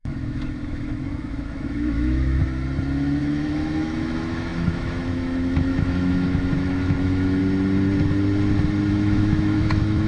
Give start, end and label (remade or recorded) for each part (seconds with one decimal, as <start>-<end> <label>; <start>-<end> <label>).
0.0-2.4 remade; 2.4-3.2 recorded; 3.2-7.4 remade; 7.4-8.9 recorded; 8.9-10.1 remade

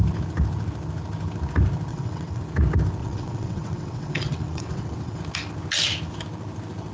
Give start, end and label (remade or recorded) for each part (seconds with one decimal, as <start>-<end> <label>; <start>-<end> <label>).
0.0-1.9 recorded; 1.9-2.4 remade; 2.4-3.0 recorded; 3.0-5.2 remade; 5.2-6.9 recorded

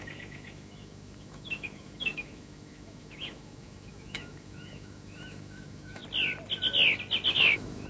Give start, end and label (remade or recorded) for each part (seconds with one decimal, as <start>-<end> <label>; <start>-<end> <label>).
0.0-6.0 remade; 6.0-7.3 recorded; 7.3-7.9 remade

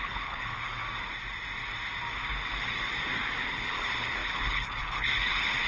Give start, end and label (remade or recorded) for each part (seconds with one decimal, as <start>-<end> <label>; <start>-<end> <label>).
0.0-0.8 remade; 0.8-3.4 recorded; 3.4-5.7 remade

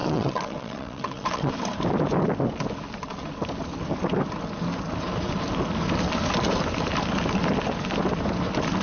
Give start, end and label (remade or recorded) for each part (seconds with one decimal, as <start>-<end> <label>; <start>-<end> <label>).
0.0-1.5 remade; 1.5-8.8 recorded

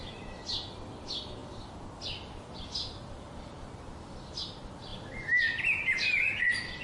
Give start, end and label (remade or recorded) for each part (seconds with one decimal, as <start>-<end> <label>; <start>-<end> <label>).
0.0-6.8 recorded